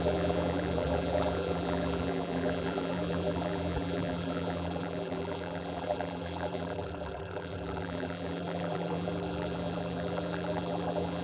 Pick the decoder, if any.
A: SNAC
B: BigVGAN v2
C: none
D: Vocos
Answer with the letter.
B